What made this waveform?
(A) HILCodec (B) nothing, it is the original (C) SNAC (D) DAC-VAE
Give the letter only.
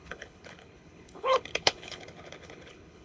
A